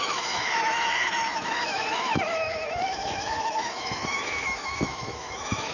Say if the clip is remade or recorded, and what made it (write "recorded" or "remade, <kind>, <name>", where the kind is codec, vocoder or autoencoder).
remade, autoencoder, DAC-VAE